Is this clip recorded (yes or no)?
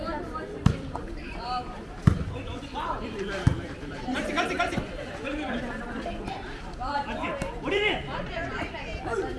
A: no